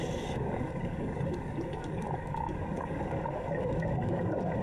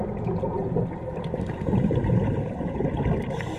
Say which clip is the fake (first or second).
first